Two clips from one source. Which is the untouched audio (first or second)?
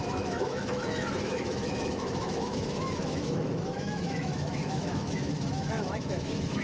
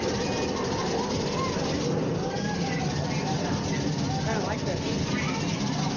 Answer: second